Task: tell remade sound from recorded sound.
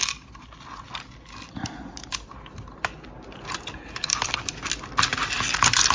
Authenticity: recorded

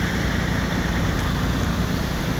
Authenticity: recorded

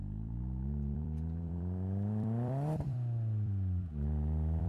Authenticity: remade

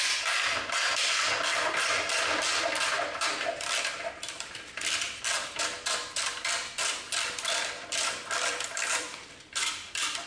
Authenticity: remade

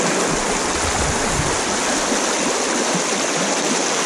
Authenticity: recorded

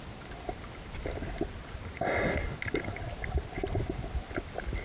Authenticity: recorded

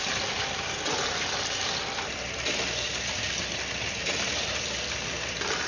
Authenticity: remade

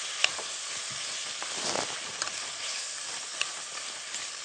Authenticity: remade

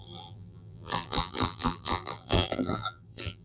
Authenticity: remade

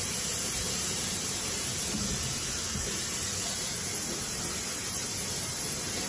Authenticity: remade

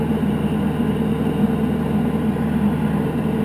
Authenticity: recorded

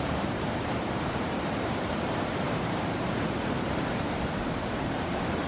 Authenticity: remade